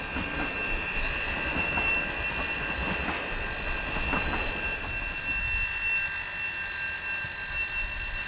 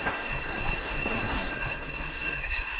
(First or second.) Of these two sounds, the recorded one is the first